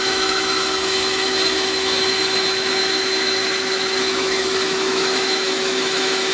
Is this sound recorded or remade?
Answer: remade